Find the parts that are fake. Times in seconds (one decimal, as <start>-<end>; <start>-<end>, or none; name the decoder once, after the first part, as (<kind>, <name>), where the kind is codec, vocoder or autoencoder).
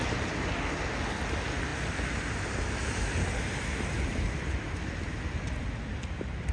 none